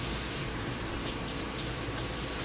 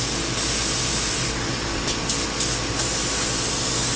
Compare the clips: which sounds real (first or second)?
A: second